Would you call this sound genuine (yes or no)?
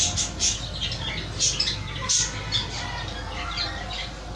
yes